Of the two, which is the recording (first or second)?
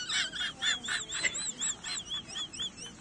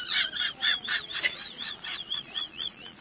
first